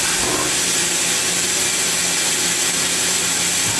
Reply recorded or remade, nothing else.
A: recorded